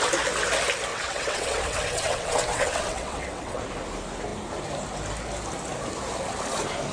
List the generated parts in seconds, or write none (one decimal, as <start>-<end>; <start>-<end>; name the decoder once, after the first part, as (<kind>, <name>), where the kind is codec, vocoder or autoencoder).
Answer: 0.9-3.6 (vocoder, WaveNeXt)